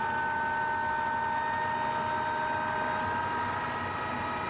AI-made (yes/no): no